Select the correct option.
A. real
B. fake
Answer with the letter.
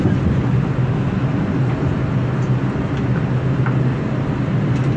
A